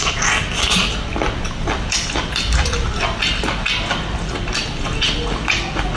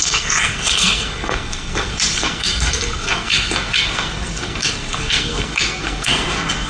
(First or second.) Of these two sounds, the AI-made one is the second